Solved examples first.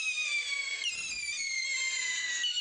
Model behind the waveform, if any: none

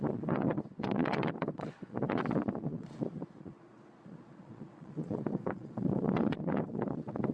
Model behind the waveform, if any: vocoder, Vocos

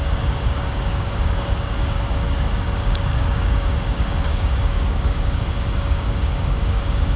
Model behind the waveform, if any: codec, DAC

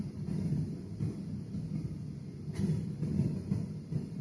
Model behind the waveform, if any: none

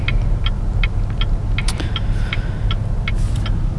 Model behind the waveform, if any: none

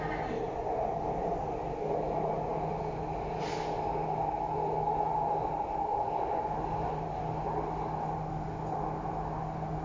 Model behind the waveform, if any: none